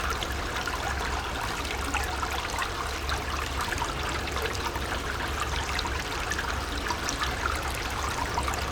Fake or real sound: real